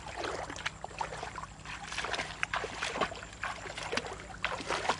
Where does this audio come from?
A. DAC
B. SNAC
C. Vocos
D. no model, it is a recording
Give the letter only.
D